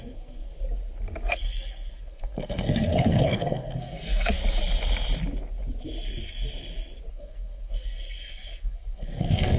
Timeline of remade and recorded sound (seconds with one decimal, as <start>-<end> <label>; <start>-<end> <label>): 0.0-0.5 remade; 0.5-1.3 recorded; 1.3-4.4 remade; 4.4-7.1 recorded; 7.1-9.6 remade